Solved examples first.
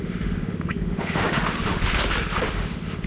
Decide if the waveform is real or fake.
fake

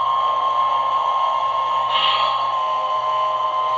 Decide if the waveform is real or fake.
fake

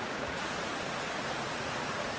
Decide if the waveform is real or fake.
fake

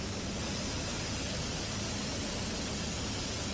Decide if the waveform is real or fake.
real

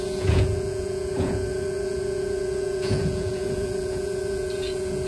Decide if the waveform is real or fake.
fake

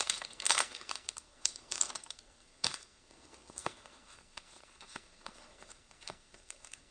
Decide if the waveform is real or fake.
fake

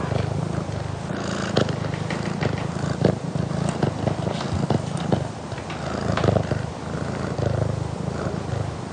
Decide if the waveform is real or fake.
real